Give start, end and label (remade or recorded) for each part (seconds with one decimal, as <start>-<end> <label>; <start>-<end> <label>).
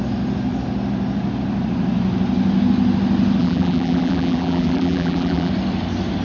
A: 0.0-3.4 recorded; 3.4-5.5 remade; 5.5-6.2 recorded